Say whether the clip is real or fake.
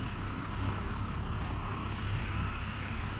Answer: fake